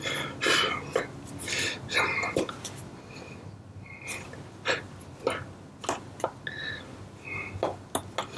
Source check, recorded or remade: recorded